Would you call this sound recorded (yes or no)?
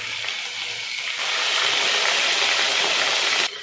yes